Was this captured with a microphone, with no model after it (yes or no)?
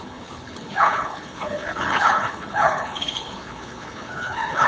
no